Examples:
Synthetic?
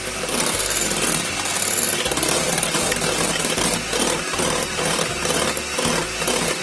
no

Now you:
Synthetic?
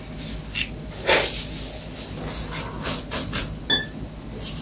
no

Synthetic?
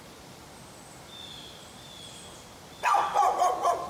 no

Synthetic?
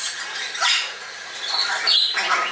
no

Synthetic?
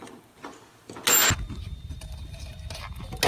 no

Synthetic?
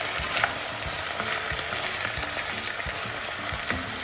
no